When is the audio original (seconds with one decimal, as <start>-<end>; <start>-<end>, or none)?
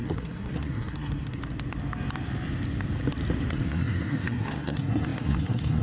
1.4-3.5